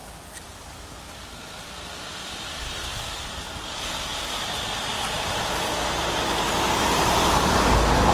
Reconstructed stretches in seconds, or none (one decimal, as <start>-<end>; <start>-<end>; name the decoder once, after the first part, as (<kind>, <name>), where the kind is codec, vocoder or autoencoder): 2.0-2.9 (vocoder, BigVGAN v2); 3.4-8.1